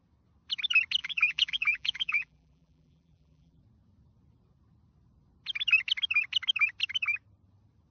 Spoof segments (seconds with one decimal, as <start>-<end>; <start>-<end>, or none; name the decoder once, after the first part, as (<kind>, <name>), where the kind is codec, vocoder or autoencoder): 1.0-3.6 (vocoder, BigVGAN v2)